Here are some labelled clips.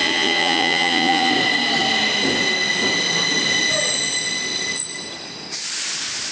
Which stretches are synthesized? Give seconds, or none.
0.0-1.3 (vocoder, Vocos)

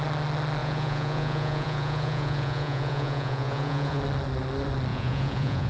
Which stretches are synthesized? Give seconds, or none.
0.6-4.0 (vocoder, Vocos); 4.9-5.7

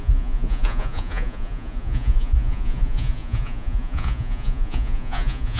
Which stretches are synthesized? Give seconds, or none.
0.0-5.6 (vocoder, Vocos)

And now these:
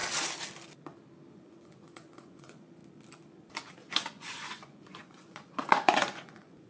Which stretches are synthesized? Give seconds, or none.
1.3-2.8 (vocoder, Vocos); 3.9-6.7

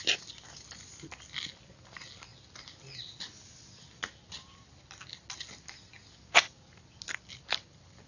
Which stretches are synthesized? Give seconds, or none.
none

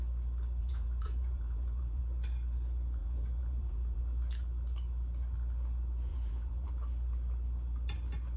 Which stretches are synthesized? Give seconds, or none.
0.6-2.0 (vocoder, Vocos); 3.0-4.0; 6.1-6.7

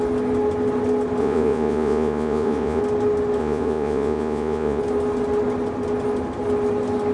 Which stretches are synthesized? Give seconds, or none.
1.2-2.8 (vocoder, Vocos); 3.4-4.8

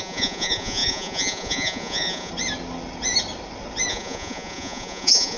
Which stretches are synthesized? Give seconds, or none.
0.0-2.3 (vocoder, Vocos); 3.9-5.4